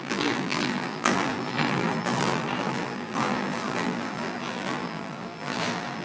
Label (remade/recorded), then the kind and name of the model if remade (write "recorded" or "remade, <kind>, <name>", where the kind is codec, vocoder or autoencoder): remade, vocoder, BigVGAN v2